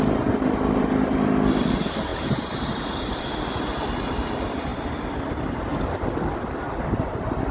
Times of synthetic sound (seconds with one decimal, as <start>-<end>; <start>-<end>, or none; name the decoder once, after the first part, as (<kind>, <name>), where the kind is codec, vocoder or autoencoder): 2.1-3.2 (vocoder, BigVGAN v2)